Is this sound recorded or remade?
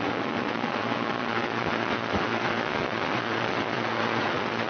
remade